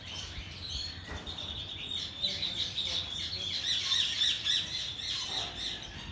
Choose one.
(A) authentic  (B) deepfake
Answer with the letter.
B